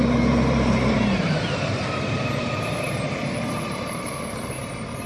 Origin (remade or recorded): remade